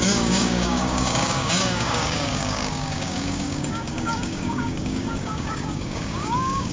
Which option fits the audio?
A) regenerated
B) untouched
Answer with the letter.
A